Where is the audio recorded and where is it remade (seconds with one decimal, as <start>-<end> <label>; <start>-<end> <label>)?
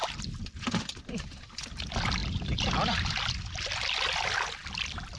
0.0-5.2 recorded